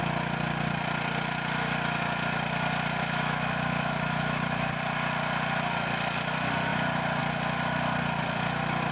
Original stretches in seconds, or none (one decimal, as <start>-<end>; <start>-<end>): 0.0-3.0; 4.7-8.9